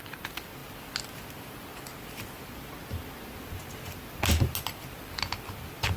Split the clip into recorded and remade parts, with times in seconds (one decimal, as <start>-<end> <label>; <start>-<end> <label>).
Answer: 0.0-6.0 recorded